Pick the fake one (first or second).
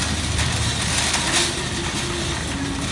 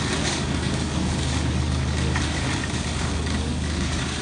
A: second